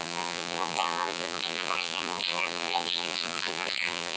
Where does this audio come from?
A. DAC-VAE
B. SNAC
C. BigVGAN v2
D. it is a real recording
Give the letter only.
C